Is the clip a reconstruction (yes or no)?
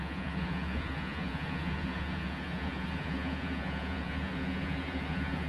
yes